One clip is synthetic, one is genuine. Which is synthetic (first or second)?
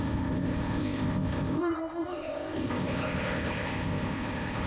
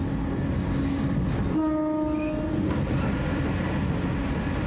first